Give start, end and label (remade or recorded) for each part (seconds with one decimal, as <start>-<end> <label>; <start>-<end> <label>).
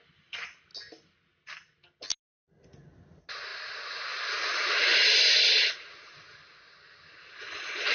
0.0-7.9 recorded